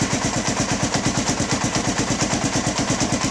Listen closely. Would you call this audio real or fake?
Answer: fake